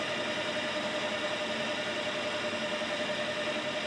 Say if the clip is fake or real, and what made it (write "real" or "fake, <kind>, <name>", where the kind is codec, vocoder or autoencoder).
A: real